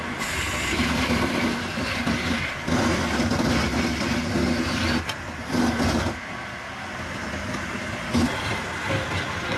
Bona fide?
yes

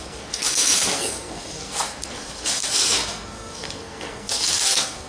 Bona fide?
no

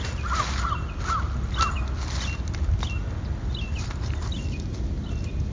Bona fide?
yes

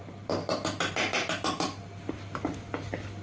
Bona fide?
yes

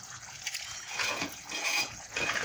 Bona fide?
no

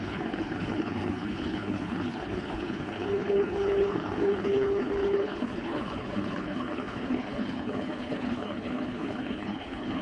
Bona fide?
no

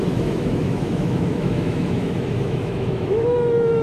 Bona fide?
no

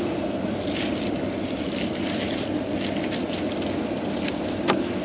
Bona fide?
yes